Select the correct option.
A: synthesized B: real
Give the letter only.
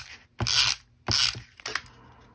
B